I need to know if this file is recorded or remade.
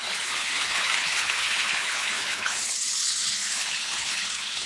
remade